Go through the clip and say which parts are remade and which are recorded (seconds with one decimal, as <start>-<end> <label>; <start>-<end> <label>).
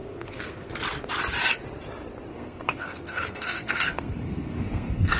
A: 0.0-0.7 remade; 0.7-2.3 recorded; 2.3-5.2 remade